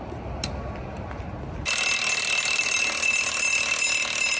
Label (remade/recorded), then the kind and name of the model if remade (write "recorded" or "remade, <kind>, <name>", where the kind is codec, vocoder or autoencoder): recorded